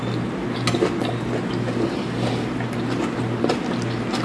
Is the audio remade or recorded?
recorded